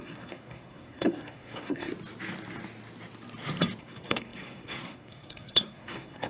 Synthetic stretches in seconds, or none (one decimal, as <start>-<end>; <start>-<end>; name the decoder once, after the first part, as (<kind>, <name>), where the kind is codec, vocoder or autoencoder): 0.0-1.9 (codec, SNAC); 3.8-6.3